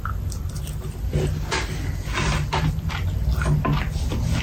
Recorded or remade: recorded